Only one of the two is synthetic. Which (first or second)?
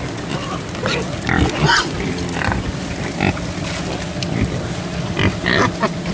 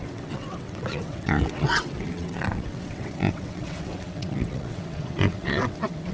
second